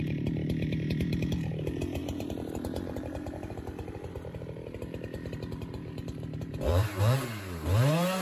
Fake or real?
fake